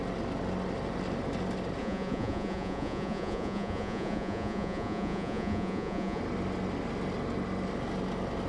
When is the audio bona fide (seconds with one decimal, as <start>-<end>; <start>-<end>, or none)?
0.0-1.8; 6.2-8.5

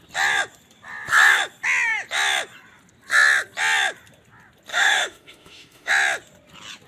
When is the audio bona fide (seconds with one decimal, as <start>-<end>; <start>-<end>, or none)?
0.0-4.7; 5.9-6.9

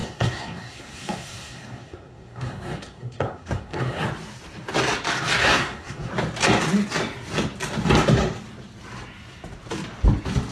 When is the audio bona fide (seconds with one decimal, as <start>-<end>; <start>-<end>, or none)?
4.0-5.4; 6.1-10.5

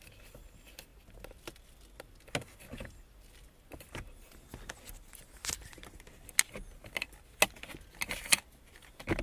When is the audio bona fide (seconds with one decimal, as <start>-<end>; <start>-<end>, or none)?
0.0-9.2